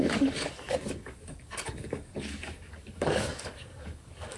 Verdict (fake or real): fake